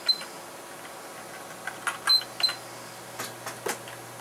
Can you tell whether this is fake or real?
real